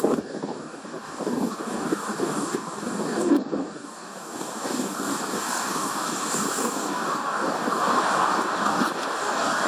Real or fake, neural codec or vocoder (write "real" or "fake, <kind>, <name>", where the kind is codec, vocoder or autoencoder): fake, codec, DAC